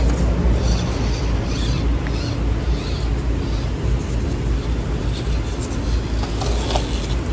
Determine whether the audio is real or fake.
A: real